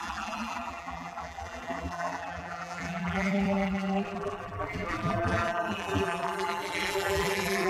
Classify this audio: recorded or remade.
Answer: remade